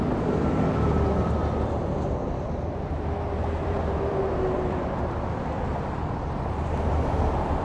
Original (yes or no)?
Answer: no